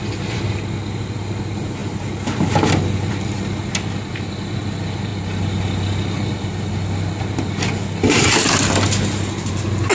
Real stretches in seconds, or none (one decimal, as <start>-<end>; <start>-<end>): 0.0-9.9